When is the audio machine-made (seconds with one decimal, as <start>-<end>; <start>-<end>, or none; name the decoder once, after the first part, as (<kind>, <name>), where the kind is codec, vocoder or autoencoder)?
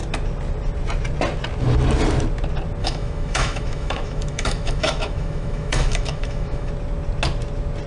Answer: 2.8-6.7 (autoencoder, DAC-VAE)